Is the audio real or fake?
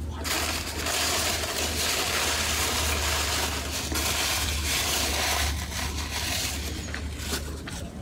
real